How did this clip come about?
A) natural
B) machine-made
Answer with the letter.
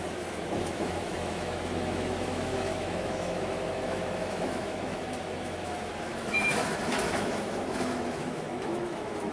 B